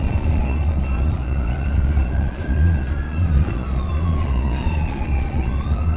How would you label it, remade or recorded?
remade